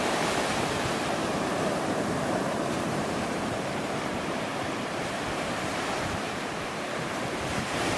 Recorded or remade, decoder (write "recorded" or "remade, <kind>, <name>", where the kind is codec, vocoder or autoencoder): remade, vocoder, BigVGAN v2